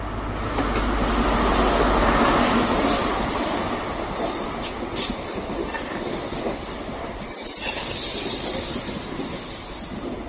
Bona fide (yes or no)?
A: yes